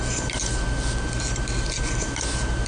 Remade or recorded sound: recorded